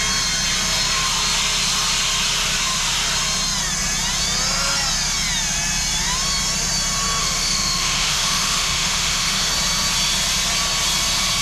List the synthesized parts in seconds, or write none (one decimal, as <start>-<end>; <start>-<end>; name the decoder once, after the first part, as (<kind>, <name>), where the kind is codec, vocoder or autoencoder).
7.2-9.5 (autoencoder, DAC-VAE)

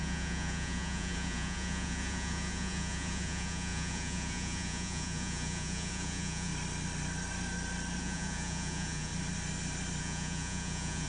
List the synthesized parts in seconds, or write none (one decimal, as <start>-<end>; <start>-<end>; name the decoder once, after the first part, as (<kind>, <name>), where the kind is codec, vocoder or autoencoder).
0.0-6.5 (vocoder, Vocos); 8.0-9.1; 10.0-11.1

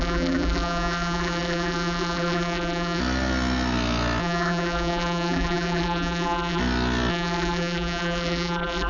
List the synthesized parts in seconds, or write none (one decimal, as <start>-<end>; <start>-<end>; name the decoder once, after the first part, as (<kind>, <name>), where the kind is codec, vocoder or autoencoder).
0.0-3.0 (vocoder, BigVGAN v2); 4.2-6.6; 7.1-8.9

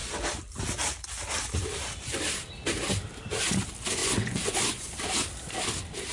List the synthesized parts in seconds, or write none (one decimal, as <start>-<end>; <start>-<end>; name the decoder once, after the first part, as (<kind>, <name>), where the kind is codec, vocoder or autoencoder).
4.0-4.9 (vocoder, Vocos)